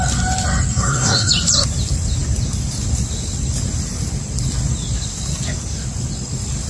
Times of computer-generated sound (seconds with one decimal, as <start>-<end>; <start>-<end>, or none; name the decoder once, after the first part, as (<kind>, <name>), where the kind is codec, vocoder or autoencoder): 0.7-1.3 (codec, SNAC)